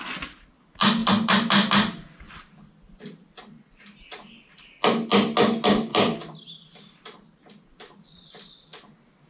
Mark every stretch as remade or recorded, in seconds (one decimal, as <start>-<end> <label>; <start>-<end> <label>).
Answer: 0.0-1.0 recorded; 1.0-3.4 remade; 3.4-5.9 recorded; 5.9-7.0 remade; 7.0-9.3 recorded